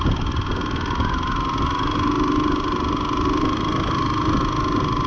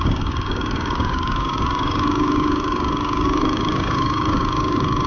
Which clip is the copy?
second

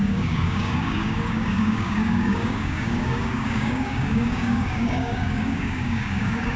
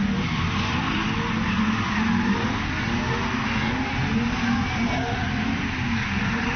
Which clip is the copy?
first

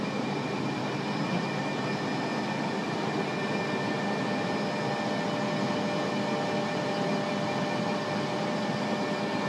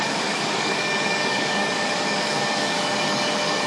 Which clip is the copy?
second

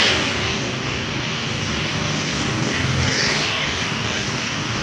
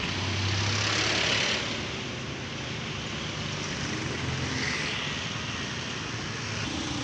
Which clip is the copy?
first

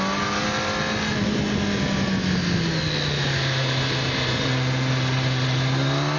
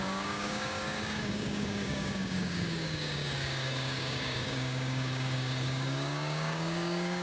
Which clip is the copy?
second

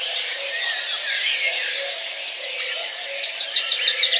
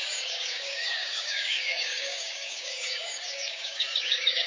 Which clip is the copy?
second